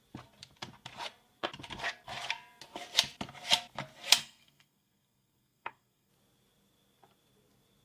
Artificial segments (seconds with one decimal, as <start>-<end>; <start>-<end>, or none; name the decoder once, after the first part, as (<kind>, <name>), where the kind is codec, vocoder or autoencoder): 4.2-6.1 (codec, SNAC)